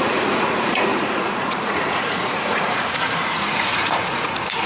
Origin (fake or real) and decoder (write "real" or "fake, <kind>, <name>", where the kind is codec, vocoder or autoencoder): fake, vocoder, Vocos